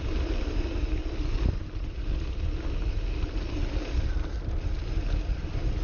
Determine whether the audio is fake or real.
real